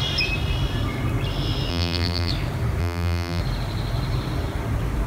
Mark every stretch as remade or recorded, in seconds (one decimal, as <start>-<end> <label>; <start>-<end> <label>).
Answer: 0.0-1.7 recorded; 1.7-2.3 remade; 2.3-2.8 recorded; 2.8-3.4 remade; 3.4-5.1 recorded